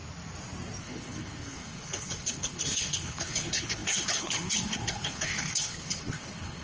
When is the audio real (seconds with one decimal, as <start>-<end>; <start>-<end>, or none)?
0.0-0.8